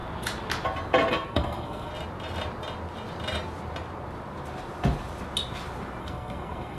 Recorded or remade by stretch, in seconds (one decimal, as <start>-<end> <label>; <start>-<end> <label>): 0.0-1.1 recorded; 1.1-1.9 remade; 1.9-6.0 recorded; 6.0-6.8 remade